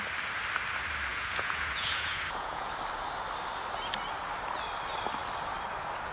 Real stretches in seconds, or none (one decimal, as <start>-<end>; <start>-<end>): 0.0-1.1; 2.7-6.1